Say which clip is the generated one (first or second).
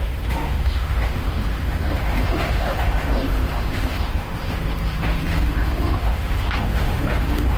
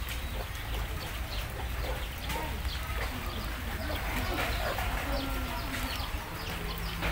first